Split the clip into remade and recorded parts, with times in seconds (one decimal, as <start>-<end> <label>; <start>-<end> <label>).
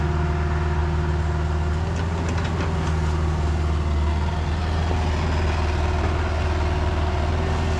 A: 0.0-7.8 recorded